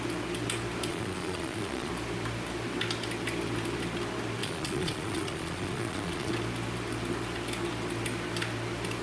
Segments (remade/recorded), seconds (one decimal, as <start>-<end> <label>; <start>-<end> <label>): 0.0-0.9 recorded; 0.9-1.9 remade; 1.9-4.4 recorded; 4.4-6.3 remade; 6.3-9.0 recorded